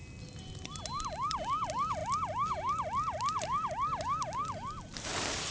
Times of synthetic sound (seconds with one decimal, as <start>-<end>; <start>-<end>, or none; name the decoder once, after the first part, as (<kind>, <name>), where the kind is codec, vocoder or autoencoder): none

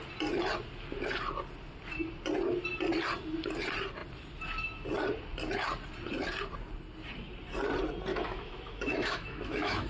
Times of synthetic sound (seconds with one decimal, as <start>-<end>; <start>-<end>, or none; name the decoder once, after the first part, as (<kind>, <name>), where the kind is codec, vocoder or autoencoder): 8.1-9.9 (autoencoder, DAC-VAE)

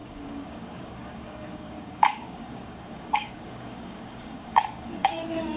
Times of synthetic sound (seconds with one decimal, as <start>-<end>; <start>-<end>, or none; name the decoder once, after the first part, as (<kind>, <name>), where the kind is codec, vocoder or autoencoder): 0.0-5.6 (codec, DAC)

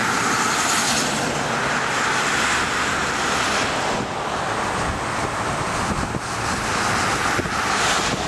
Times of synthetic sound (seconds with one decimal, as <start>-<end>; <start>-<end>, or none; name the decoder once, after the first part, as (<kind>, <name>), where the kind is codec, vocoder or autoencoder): none

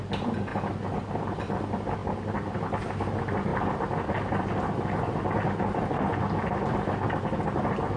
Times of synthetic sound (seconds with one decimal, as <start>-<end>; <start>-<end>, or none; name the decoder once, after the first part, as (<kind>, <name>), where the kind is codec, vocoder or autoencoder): none

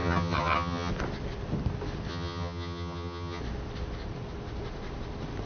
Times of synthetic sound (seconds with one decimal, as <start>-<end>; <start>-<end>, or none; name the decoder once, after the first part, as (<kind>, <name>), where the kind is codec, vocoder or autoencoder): 0.0-0.9 (vocoder, HiFi-GAN); 2.1-3.4

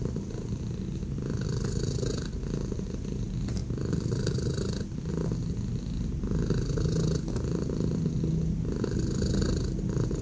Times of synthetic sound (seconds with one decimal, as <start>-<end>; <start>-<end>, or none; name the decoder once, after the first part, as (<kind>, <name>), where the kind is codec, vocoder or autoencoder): none